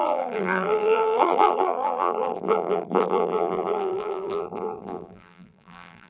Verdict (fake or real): fake